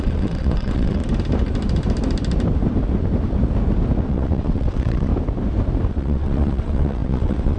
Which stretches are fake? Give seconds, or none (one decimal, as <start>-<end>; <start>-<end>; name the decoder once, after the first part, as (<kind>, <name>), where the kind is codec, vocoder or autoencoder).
0.0-1.0 (vocoder, WaveNeXt); 4.1-5.1; 5.9-7.6